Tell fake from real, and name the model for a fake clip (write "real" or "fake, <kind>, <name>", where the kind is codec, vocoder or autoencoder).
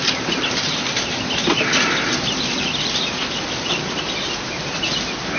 real